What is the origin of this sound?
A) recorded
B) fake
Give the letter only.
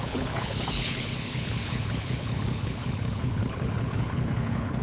B